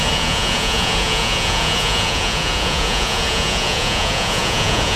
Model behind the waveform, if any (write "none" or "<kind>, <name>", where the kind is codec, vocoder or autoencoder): vocoder, Vocos